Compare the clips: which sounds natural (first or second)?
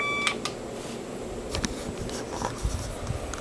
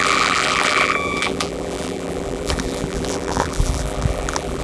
first